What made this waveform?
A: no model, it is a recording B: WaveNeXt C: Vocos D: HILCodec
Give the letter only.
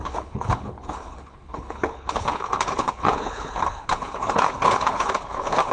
D